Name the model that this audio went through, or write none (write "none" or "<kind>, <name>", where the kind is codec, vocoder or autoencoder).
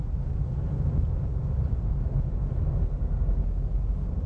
none